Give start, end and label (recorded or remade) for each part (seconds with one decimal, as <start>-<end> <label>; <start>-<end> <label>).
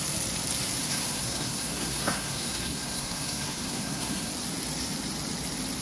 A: 0.0-0.8 recorded; 0.8-4.3 remade; 4.3-5.8 recorded